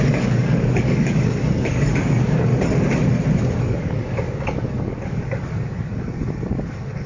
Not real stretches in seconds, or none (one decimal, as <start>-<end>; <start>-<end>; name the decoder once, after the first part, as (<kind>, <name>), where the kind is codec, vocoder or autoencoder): 0.0-2.5 (codec, DAC); 3.6-7.1